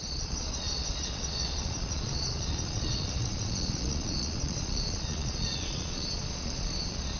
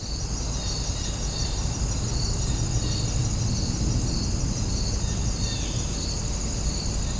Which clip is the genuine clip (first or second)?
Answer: second